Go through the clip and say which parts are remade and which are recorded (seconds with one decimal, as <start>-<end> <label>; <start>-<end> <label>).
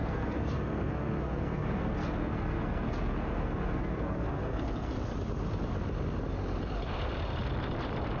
0.0-4.9 remade; 4.9-8.2 recorded